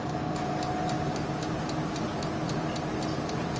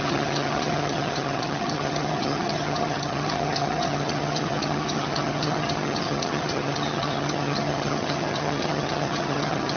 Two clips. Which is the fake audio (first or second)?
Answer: second